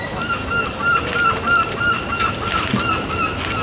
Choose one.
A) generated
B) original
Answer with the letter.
B